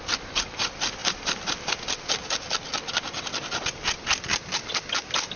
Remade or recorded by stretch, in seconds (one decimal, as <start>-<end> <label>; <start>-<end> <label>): 0.0-5.4 recorded